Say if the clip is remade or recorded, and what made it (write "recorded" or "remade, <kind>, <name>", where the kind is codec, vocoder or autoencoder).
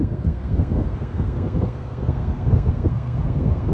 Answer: remade, codec, SNAC